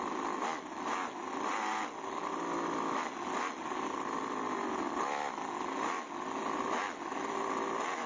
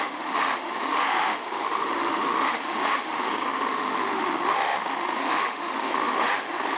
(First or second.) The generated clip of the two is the second